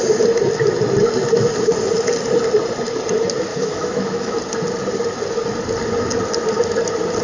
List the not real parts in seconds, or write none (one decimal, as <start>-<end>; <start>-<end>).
3.5-4.4